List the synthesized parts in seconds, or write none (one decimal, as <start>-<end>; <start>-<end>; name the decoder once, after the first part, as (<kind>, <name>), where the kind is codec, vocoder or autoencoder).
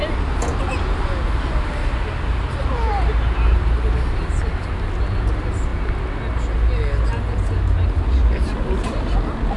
none